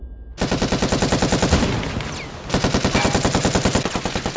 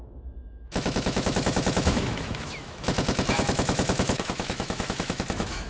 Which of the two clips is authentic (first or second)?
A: first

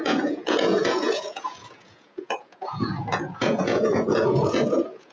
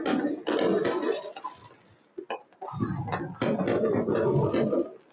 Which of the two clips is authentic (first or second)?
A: second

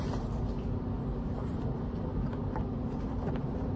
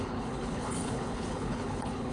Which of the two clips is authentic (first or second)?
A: first